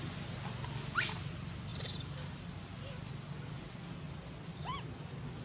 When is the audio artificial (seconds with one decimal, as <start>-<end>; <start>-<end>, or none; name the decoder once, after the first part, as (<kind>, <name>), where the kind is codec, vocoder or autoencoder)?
none